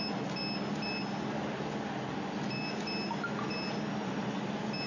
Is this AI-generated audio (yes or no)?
no